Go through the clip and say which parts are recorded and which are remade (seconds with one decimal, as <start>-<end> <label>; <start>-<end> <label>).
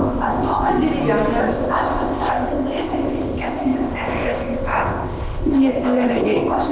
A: 0.0-0.7 remade; 0.7-1.4 recorded; 1.4-6.7 remade